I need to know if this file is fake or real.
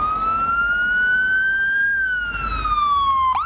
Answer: real